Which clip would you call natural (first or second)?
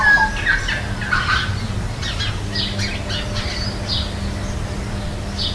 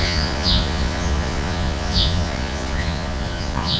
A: first